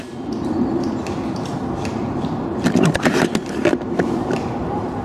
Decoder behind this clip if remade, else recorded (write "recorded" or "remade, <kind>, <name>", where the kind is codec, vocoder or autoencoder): recorded